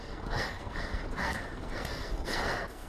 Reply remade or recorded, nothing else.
remade